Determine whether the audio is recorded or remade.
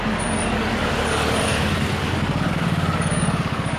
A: remade